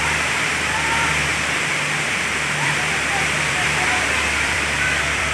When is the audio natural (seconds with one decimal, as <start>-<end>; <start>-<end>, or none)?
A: 1.3-2.0